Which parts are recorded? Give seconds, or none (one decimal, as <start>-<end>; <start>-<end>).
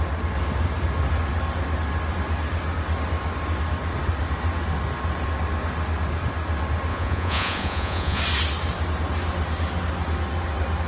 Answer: 0.0-6.9; 8.2-10.9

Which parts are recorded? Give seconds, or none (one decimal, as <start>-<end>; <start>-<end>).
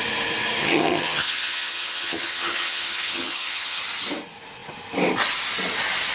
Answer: 0.0-0.6; 3.8-6.1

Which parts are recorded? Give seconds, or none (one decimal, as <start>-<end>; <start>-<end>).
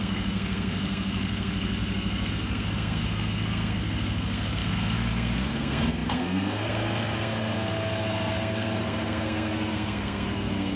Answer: none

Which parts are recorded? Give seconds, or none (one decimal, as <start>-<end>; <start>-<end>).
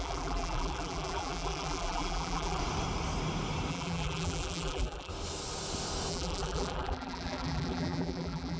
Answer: 2.6-3.7; 5.1-6.1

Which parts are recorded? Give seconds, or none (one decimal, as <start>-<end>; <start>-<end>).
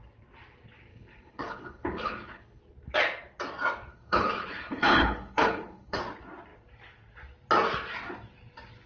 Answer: 0.0-0.9; 2.6-3.9; 6.0-8.9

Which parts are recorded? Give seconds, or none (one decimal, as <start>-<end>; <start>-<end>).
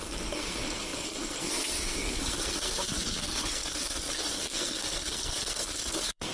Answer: none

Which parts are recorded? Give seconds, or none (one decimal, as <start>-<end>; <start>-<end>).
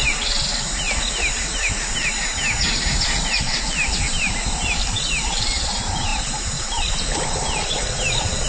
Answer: 0.5-5.2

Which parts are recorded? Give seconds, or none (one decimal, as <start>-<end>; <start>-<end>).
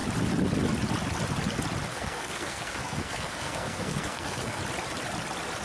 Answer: 0.0-1.9; 4.6-5.6